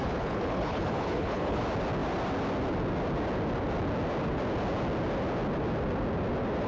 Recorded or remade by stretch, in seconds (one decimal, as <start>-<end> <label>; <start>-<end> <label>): 0.0-1.6 remade; 1.6-6.7 recorded